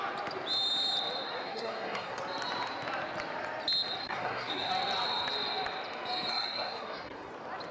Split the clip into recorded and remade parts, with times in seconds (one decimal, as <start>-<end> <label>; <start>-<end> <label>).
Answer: 0.0-1.4 recorded; 1.4-2.2 remade; 2.2-4.0 recorded; 4.0-4.7 remade; 4.7-6.3 recorded; 6.3-7.3 remade; 7.3-7.7 recorded